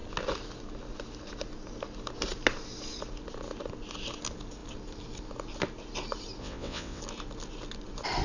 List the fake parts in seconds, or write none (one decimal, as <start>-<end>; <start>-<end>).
6.4-7.0